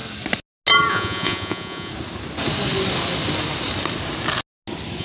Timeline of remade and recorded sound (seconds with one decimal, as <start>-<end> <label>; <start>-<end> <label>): 0.0-0.9 recorded; 0.9-1.9 remade; 1.9-5.0 recorded